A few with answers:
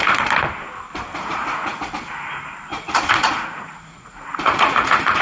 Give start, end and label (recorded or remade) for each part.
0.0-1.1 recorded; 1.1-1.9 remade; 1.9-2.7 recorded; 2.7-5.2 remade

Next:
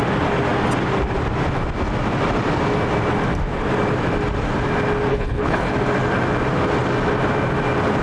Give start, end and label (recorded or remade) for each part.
0.0-5.1 recorded; 5.1-5.7 remade; 5.7-8.0 recorded